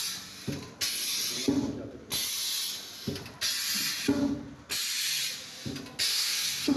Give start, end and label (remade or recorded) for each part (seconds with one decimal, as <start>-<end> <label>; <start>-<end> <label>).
0.0-6.1 recorded; 6.1-6.8 remade